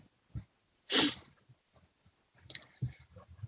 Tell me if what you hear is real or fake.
real